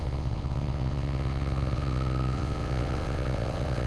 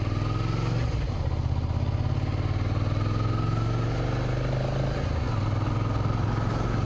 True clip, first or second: second